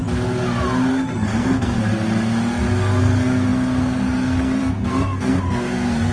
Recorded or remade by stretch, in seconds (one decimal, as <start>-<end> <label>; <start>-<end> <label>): 0.0-0.9 recorded; 0.9-1.9 remade; 1.9-3.0 recorded; 3.0-6.1 remade